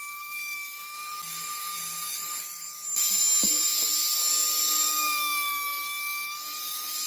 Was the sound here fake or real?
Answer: fake